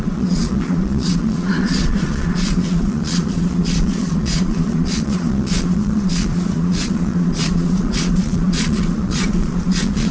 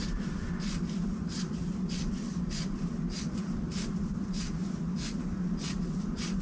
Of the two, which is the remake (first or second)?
first